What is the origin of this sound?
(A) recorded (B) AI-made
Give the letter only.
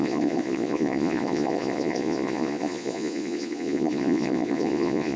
B